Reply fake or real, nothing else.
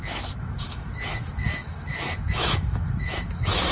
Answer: fake